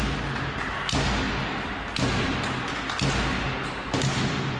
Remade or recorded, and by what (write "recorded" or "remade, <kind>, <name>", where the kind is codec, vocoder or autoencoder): recorded